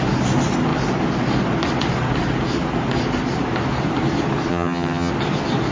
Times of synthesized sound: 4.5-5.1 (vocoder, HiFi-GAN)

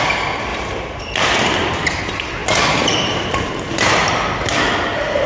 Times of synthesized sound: 0.5-2.0 (vocoder, BigVGAN v2); 2.4-4.1

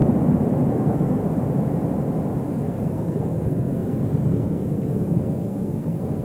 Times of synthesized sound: 0.7-1.2 (codec, SNAC); 2.5-6.2

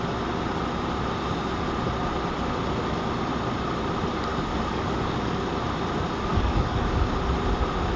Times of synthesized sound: 4.3-5.4 (codec, DAC); 6.3-7.1